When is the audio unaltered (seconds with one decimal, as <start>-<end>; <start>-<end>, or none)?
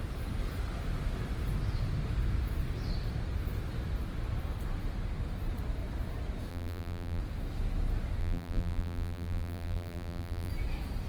0.0-6.5; 7.2-8.2; 10.5-11.1